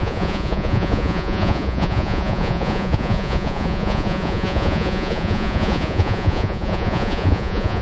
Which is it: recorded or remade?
remade